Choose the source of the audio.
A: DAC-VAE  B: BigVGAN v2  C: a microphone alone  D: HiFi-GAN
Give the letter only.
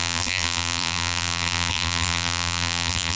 B